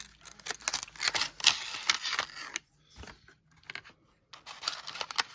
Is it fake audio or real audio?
real